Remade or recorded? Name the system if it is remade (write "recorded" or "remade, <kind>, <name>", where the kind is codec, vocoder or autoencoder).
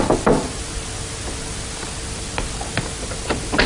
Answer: recorded